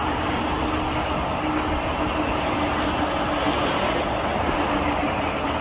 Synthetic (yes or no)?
no